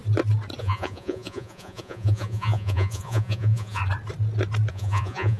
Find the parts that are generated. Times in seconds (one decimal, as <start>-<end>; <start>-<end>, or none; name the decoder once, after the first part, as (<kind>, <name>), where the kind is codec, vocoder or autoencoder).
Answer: 0.6-3.8 (vocoder, Vocos); 4.7-5.4